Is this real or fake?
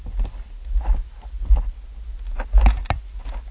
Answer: real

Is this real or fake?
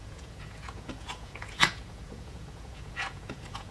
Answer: fake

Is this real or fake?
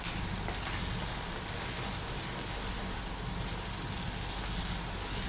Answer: real